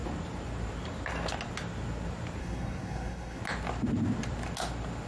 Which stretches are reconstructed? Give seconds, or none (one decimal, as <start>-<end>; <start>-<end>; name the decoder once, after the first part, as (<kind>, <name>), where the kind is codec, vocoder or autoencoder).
2.4-3.4 (codec, SNAC)